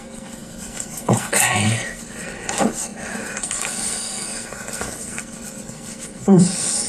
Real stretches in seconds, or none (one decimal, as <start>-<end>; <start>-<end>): none